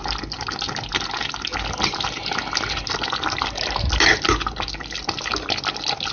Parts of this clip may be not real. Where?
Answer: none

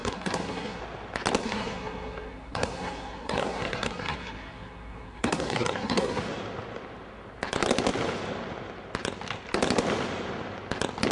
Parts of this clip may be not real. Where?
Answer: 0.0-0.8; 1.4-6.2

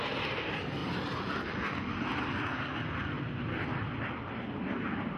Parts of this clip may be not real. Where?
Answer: none

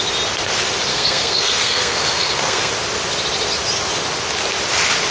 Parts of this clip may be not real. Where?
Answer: 0.9-2.7